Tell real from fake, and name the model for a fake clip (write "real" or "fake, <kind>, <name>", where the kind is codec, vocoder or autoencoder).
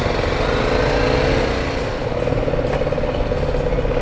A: real